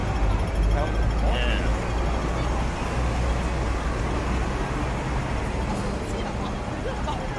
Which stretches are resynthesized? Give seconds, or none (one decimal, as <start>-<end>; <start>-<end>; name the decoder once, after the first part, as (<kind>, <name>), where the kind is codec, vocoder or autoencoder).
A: none